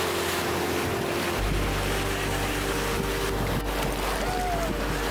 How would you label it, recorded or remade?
recorded